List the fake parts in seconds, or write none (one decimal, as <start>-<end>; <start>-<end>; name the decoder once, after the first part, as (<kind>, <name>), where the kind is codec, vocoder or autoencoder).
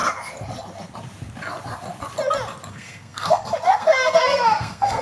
2.7-5.0 (codec, SNAC)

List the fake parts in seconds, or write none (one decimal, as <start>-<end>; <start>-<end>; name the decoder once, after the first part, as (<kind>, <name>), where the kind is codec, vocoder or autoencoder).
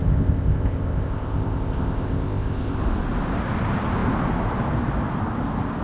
0.0-2.8 (codec, ZipCodec)